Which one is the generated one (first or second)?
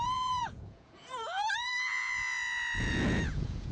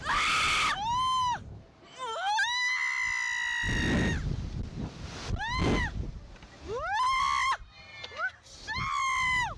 first